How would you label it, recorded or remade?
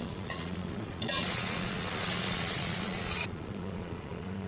remade